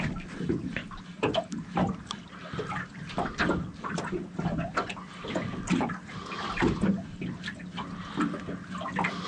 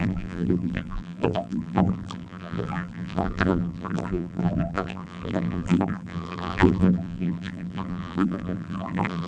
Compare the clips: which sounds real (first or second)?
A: first